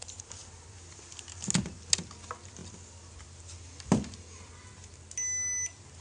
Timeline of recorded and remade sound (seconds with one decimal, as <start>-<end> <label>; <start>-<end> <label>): 0.0-6.0 recorded